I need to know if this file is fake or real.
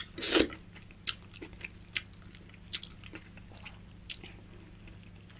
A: real